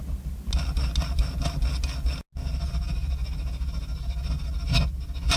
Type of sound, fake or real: real